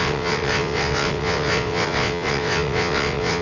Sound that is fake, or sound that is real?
fake